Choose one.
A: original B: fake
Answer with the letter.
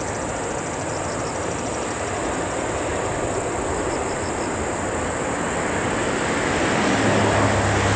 A